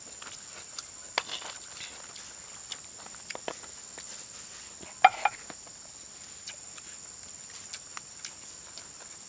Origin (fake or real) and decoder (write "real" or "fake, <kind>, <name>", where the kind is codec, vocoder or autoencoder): real